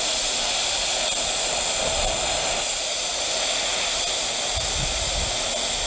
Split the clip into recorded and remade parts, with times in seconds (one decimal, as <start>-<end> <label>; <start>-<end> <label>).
0.0-0.9 recorded; 0.9-2.3 remade; 2.3-5.9 recorded